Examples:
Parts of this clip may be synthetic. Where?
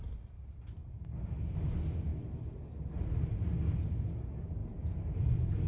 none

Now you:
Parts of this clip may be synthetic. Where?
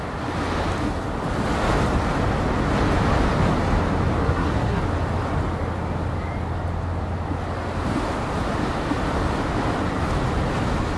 4.2-4.8 (codec, SNAC)